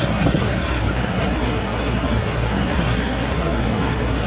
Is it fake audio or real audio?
fake